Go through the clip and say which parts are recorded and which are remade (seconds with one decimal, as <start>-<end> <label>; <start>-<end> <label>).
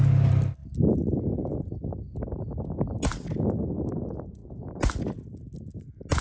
0.0-6.2 recorded